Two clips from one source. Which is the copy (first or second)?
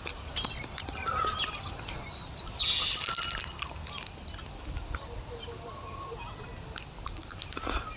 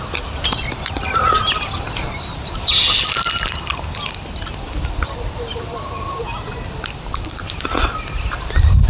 second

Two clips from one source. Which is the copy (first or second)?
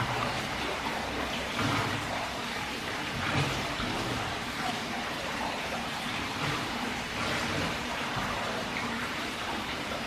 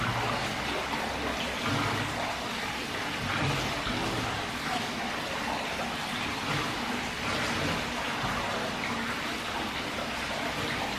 first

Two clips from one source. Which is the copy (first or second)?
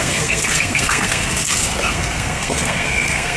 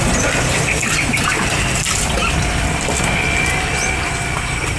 first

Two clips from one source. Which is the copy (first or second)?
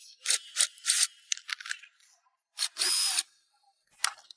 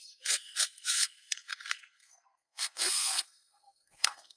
second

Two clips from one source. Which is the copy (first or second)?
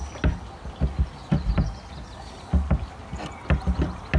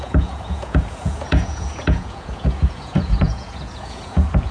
second